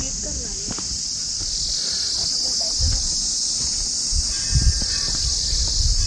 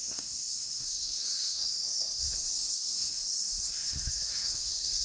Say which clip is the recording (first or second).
first